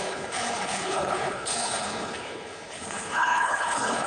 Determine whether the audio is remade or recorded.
remade